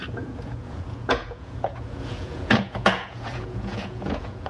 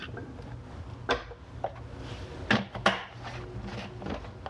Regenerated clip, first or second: first